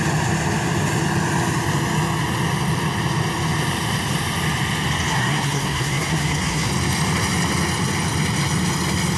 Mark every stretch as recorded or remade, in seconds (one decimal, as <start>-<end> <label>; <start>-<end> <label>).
0.0-5.1 recorded; 5.1-6.7 remade; 6.7-9.2 recorded